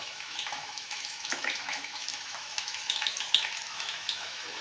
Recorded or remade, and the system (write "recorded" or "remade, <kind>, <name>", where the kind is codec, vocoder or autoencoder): remade, autoencoder, DAC-VAE